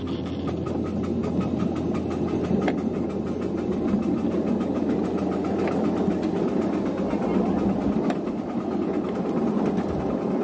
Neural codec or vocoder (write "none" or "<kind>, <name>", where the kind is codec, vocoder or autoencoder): none